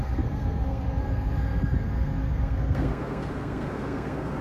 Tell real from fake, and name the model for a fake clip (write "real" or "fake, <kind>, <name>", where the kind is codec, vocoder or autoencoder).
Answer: fake, codec, SNAC